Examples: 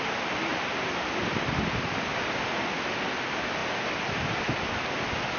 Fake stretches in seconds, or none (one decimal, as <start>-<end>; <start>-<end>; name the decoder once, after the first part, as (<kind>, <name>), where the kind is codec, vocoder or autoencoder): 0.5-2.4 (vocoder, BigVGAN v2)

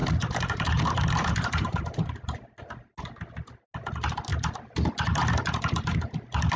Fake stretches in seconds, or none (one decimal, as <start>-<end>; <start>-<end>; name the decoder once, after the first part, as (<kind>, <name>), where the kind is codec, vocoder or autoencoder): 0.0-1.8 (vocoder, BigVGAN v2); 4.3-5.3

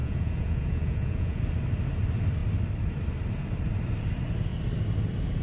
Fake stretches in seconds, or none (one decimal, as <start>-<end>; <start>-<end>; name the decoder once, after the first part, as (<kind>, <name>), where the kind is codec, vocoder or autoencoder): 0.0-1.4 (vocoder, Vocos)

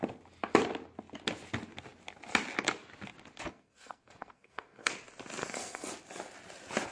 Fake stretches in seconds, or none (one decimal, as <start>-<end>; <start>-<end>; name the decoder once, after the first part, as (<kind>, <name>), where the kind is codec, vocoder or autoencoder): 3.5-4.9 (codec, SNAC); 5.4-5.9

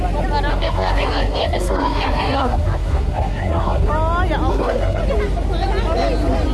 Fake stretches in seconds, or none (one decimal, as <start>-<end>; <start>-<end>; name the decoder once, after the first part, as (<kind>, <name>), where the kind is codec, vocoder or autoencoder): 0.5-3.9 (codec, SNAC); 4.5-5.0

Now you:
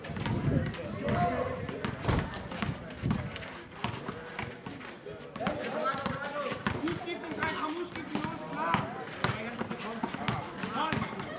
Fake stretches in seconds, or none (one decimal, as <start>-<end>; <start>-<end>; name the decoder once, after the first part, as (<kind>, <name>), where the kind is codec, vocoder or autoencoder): none